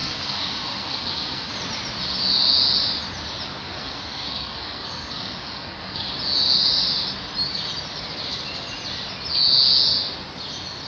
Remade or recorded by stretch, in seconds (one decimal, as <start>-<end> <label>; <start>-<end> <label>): 0.0-1.5 remade; 1.5-3.6 recorded; 3.6-6.1 remade; 6.1-10.9 recorded

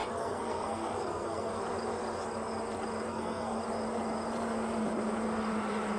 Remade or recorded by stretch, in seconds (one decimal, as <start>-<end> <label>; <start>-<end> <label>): 0.0-1.6 remade; 1.6-3.1 recorded; 3.1-3.6 remade; 3.6-6.0 recorded

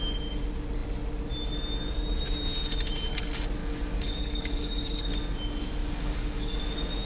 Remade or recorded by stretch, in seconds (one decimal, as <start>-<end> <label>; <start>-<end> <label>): 0.0-3.6 recorded; 3.6-5.1 remade; 5.1-5.8 recorded; 5.8-6.6 remade; 6.6-7.1 recorded

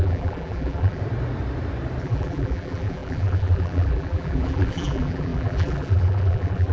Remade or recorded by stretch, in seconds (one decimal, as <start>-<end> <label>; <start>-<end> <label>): 0.0-1.0 remade; 1.0-2.0 recorded; 2.0-6.7 remade

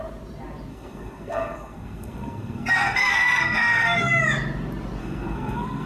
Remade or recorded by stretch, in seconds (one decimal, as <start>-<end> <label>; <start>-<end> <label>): 0.0-0.7 recorded; 0.7-4.2 remade; 4.2-5.0 recorded; 5.0-5.9 remade

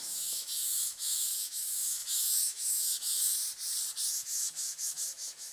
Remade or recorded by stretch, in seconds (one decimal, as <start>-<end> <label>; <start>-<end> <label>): 0.0-3.4 remade; 3.4-4.1 recorded; 4.1-5.5 remade

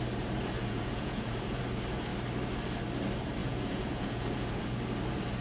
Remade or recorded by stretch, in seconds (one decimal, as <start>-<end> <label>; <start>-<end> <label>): 0.0-0.6 recorded; 0.6-1.6 remade; 1.6-3.4 recorded; 3.4-4.6 remade; 4.6-5.4 recorded